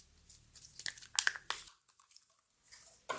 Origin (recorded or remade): recorded